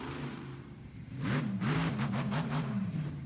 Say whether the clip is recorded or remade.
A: remade